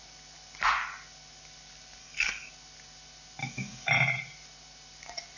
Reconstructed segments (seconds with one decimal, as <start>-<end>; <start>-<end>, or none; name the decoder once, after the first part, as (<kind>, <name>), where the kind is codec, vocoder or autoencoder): 2.0-2.5 (codec, DAC); 3.4-3.9